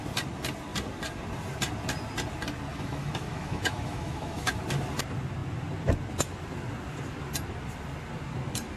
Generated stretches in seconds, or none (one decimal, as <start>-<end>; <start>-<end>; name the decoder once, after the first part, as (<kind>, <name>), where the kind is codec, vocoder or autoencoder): 2.7-4.5 (autoencoder, DAC-VAE)